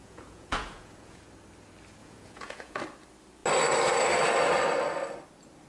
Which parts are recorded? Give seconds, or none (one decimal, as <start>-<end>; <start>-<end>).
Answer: 1.2-2.0; 2.8-5.7